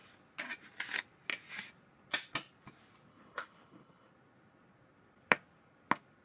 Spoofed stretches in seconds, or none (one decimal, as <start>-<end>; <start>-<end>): 3.1-4.1